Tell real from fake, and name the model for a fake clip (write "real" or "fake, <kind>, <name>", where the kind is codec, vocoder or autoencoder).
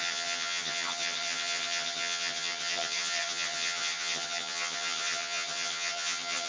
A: fake, vocoder, HiFi-GAN